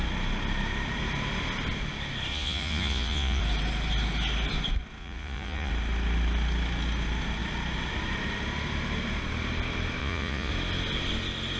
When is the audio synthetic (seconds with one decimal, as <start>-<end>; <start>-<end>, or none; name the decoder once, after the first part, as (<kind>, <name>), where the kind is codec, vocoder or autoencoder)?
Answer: 2.3-3.4 (vocoder, Vocos); 5.0-5.7; 10.0-10.5